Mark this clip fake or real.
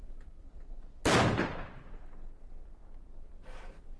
real